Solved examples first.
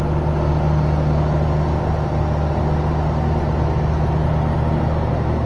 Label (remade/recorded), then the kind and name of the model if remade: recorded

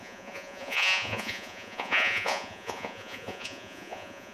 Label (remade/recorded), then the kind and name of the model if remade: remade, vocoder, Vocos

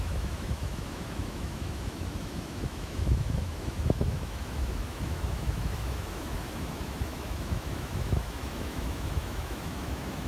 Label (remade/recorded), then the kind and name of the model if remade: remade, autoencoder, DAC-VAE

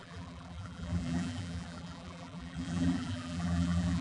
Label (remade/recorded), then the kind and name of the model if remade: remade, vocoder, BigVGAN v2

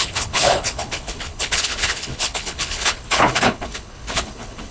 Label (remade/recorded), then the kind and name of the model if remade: remade, codec, HILCodec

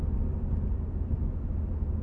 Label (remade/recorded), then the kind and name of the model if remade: recorded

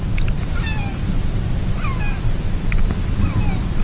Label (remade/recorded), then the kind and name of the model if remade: recorded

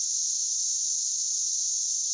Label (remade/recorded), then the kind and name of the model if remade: recorded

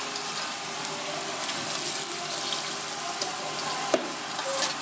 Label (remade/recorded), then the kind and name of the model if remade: recorded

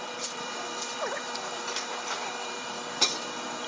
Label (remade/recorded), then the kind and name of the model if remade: remade, vocoder, BigVGAN v2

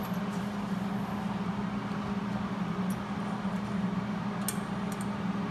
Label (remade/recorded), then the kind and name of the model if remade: recorded